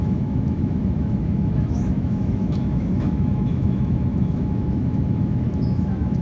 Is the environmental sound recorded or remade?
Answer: remade